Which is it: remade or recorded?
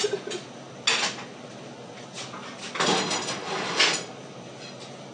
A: recorded